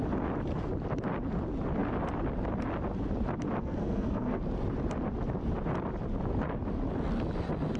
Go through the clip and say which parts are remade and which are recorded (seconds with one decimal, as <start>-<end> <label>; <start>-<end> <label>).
0.0-3.6 recorded; 3.6-4.4 remade; 4.4-7.8 recorded